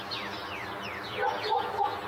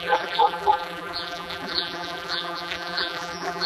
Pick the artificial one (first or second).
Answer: second